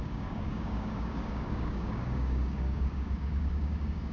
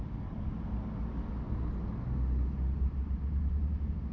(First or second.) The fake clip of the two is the first